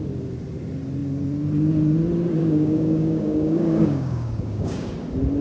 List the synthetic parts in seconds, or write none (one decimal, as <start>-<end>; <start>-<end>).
2.4-4.9

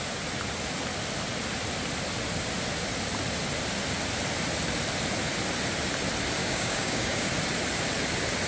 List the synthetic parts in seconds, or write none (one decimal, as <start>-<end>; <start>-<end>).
6.4-7.3